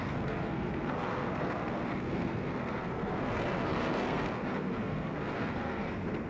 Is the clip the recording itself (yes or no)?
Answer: no